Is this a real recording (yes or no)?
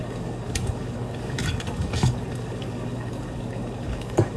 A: no